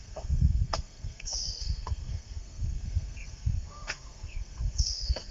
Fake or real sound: fake